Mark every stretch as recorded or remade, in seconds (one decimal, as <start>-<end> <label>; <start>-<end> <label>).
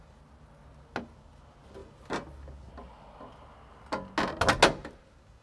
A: 0.0-5.4 recorded